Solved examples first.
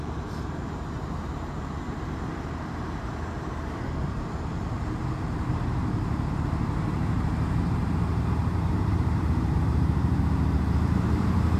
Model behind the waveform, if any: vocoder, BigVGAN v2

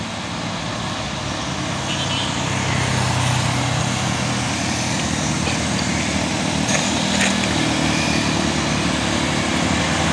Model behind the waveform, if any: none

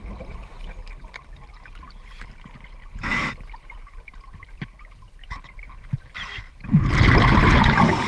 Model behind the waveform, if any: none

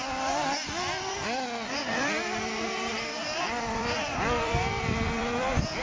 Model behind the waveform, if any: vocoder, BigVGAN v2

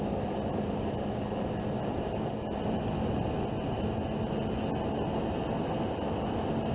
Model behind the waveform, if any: none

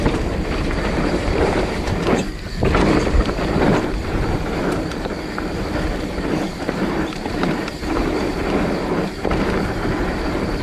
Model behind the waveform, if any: vocoder, BigVGAN v2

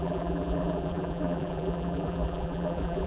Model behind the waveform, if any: vocoder, BigVGAN v2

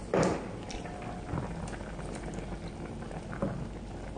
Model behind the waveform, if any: vocoder, BigVGAN v2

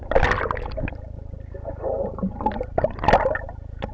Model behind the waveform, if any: none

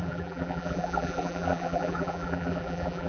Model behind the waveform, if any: vocoder, BigVGAN v2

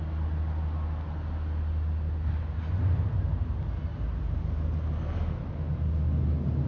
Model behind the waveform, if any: none